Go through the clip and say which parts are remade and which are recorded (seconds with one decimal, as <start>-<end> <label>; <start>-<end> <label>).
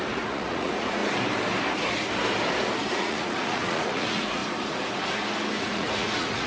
0.0-1.0 remade; 1.0-2.9 recorded; 2.9-4.4 remade; 4.4-5.6 recorded; 5.6-6.5 remade